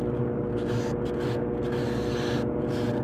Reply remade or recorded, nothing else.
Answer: recorded